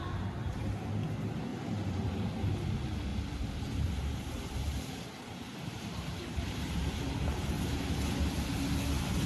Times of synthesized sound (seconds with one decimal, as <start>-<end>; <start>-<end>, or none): 0.4-0.9; 1.5-2.5; 3.1-8.0